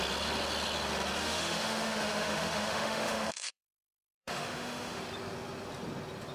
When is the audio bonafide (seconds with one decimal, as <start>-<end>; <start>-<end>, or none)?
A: 0.0-1.2; 5.0-6.3